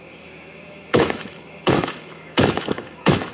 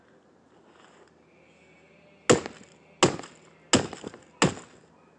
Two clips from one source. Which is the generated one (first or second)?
first